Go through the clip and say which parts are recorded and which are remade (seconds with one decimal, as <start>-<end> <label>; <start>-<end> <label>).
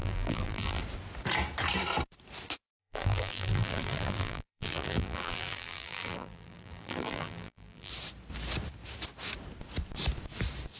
0.0-0.8 remade; 0.8-2.8 recorded; 2.8-7.9 remade; 7.9-10.8 recorded